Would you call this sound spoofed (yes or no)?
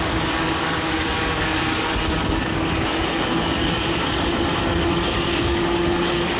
yes